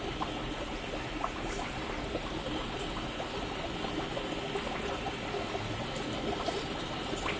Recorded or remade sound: recorded